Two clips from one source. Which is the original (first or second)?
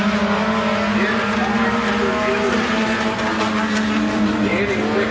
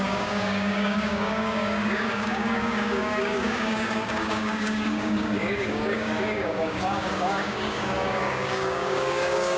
first